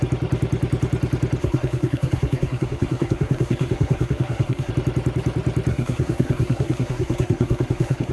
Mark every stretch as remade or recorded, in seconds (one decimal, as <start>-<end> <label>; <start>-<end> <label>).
0.0-1.4 recorded; 1.4-4.7 remade; 4.7-5.7 recorded; 5.7-8.1 remade